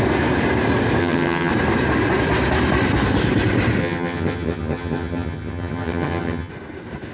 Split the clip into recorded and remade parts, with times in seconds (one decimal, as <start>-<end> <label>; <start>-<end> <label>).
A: 0.0-1.0 recorded; 1.0-1.5 remade; 1.5-3.8 recorded; 3.8-6.5 remade; 6.5-7.1 recorded